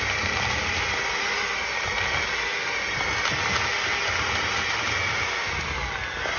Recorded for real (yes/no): yes